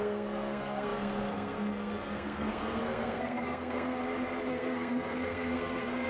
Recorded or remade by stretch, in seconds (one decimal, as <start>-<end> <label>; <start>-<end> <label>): 0.0-4.0 remade; 4.0-4.5 recorded; 4.5-6.1 remade

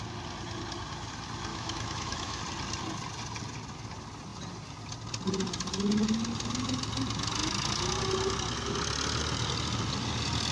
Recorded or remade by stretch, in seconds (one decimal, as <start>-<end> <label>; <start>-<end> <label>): 0.0-1.5 recorded; 1.5-2.4 remade; 2.4-10.5 recorded

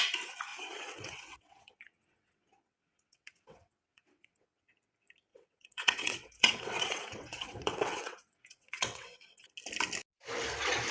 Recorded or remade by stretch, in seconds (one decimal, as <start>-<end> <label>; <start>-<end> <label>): 0.0-0.5 recorded; 0.5-4.7 remade; 4.7-5.3 recorded; 5.3-9.5 remade; 9.5-10.9 recorded